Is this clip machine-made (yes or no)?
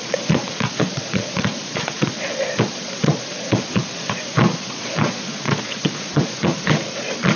yes